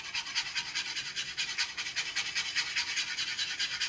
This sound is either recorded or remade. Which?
recorded